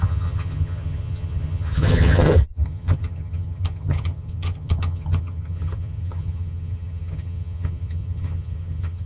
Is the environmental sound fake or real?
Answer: fake